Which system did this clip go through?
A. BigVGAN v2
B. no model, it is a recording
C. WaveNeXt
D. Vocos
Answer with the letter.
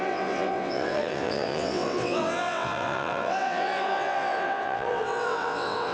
C